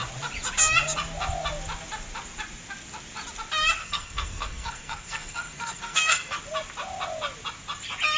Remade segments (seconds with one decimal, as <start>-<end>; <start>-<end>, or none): 3.8-6.4